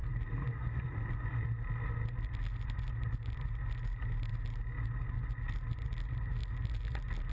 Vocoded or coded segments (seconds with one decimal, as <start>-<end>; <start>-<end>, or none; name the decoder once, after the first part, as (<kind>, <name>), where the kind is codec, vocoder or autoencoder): none